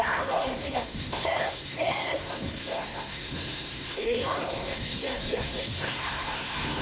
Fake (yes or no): yes